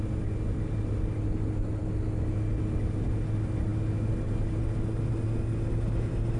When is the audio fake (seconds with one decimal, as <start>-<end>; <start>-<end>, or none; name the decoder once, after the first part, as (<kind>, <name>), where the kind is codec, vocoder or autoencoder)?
none